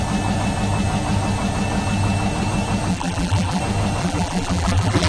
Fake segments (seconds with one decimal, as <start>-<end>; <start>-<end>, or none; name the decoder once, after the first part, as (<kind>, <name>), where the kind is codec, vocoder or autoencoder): 2.9-3.6 (vocoder, BigVGAN v2); 4.0-5.1